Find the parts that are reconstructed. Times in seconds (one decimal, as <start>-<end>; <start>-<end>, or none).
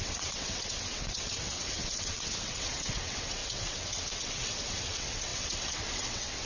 0.0-6.5